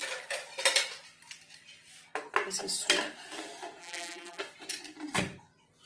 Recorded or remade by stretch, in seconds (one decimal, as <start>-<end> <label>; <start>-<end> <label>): 0.0-3.8 recorded; 3.8-4.4 remade; 4.4-5.9 recorded